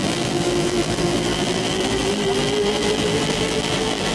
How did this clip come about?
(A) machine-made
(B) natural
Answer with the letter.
A